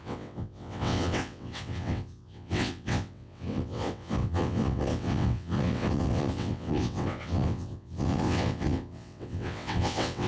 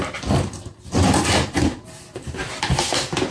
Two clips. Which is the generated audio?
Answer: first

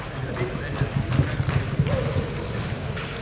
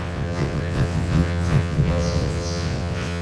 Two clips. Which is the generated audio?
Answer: second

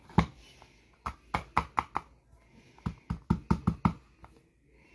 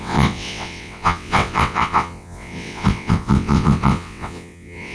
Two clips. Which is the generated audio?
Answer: second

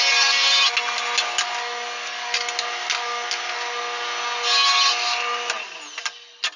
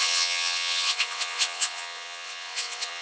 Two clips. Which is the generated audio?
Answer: second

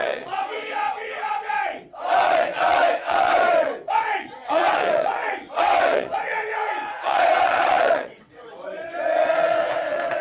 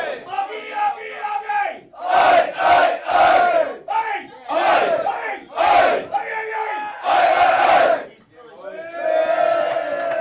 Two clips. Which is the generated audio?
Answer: first